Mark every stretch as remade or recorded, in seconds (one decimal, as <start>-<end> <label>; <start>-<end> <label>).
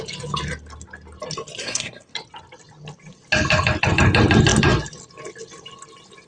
0.0-1.6 recorded; 1.6-2.1 remade; 2.1-6.3 recorded